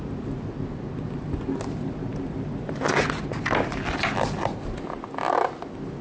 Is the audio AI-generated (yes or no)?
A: no